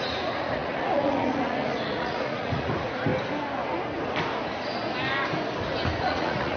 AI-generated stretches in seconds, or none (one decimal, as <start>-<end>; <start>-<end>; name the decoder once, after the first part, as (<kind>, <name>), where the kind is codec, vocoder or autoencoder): 0.0-3.1 (vocoder, Vocos); 6.0-6.6